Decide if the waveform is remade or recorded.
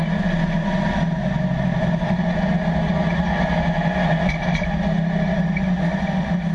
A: recorded